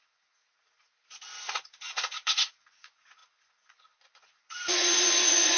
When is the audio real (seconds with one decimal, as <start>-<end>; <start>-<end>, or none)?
0.4-1.4